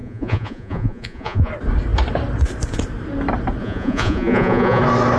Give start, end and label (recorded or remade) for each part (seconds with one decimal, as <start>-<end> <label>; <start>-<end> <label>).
0.0-1.5 remade; 1.5-3.6 recorded; 3.6-4.8 remade; 4.8-5.2 recorded